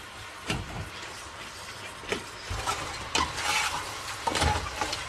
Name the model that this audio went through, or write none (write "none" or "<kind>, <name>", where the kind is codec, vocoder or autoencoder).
none